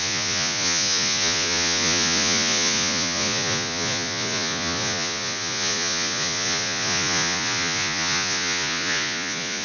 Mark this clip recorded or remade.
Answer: remade